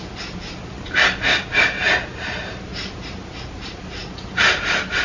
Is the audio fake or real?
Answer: real